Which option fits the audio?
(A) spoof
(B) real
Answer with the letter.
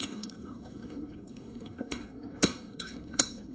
A